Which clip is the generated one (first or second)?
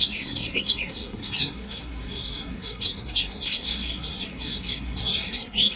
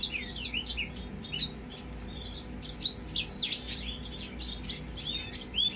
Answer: first